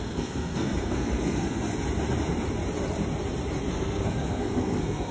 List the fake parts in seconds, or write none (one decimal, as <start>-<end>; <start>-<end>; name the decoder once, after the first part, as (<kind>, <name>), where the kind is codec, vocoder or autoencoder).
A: 0.0-1.7 (codec, SNAC); 3.7-5.1